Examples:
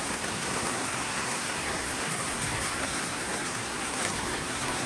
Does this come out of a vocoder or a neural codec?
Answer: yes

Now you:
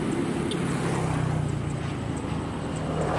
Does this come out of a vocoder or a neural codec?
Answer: no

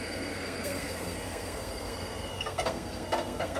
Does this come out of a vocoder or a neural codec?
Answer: yes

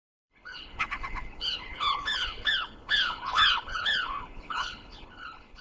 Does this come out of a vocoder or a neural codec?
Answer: yes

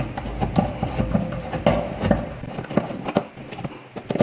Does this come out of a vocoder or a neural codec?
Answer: no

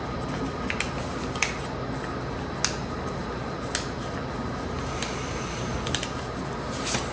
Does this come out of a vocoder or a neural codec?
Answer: no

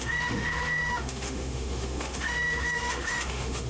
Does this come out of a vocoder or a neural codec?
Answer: yes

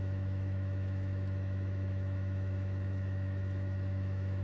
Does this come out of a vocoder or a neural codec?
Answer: yes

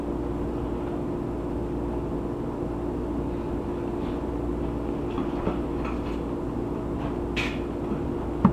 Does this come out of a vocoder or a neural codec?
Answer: no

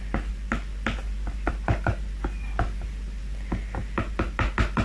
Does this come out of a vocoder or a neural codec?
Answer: no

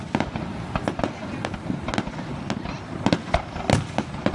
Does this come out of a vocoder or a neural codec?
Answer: no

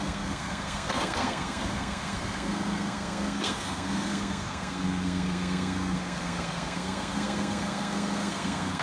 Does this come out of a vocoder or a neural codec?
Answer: yes